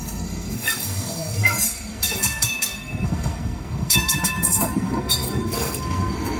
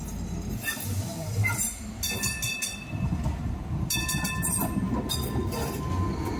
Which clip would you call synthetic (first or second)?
first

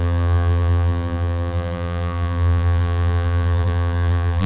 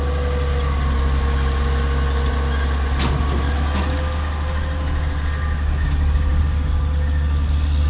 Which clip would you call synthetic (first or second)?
first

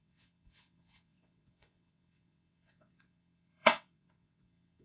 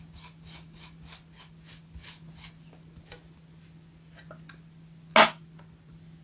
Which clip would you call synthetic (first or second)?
first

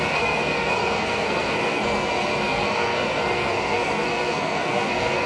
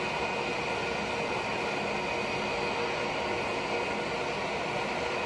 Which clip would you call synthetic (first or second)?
first